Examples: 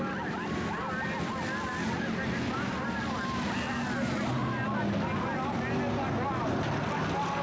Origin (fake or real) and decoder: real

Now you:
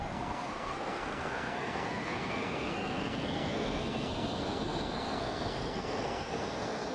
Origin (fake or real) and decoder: fake, codec, SNAC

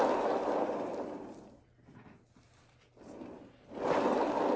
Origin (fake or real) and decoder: real